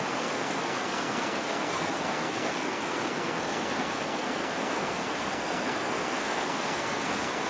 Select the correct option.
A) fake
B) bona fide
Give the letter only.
A